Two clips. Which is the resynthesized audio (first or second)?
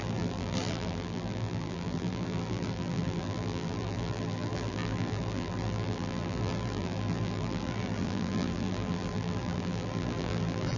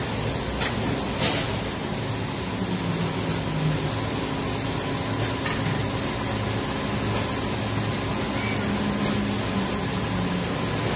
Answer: first